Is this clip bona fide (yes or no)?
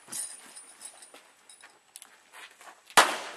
yes